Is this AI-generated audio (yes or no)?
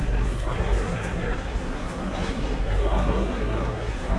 yes